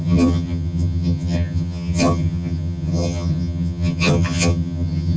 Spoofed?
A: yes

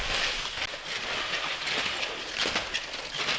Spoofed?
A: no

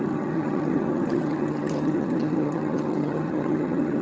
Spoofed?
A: yes